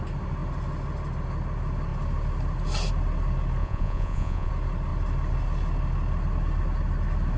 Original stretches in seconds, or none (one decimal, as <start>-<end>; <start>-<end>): 0.0-3.6; 4.5-7.4